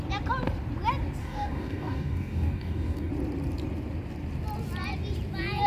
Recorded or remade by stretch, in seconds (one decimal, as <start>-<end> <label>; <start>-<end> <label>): 0.0-1.2 recorded; 1.2-3.1 remade; 3.1-5.7 recorded